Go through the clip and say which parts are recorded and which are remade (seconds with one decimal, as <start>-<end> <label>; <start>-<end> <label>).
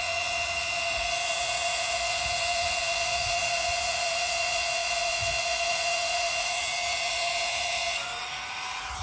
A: 0.0-9.0 remade